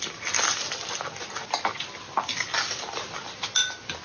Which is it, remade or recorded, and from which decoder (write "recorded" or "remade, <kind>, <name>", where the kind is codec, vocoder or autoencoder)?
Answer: recorded